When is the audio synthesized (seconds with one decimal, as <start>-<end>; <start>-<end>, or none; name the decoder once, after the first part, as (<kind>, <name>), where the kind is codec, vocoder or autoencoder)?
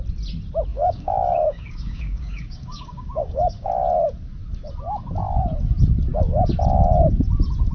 0.7-3.7 (codec, DAC)